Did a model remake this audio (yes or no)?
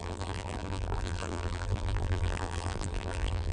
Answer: yes